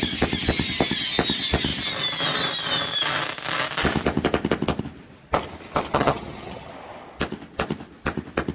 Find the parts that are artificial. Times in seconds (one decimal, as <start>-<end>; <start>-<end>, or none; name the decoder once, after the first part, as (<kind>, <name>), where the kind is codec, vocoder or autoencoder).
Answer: 5.9-6.7 (vocoder, HiFi-GAN)

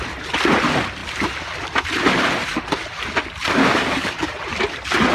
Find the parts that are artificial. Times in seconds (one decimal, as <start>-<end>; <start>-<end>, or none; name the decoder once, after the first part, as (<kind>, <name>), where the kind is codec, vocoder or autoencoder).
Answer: 3.6-4.3 (codec, DAC)